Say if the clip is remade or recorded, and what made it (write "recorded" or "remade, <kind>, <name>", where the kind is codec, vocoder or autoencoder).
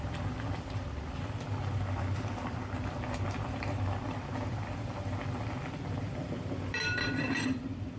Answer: remade, vocoder, BigVGAN v2